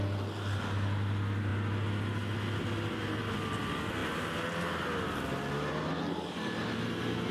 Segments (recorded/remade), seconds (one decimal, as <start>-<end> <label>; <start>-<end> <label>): 0.0-7.3 recorded